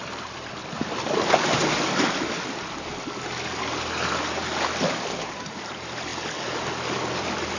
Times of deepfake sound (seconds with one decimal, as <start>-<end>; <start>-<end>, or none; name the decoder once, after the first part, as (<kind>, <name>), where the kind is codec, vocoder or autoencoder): 0.0-0.6 (vocoder, BigVGAN v2); 5.2-6.1; 7.1-7.6